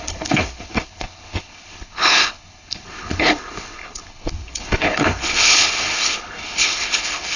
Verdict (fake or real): fake